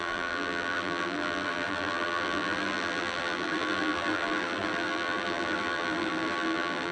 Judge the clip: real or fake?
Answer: fake